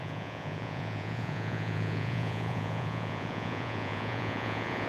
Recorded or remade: remade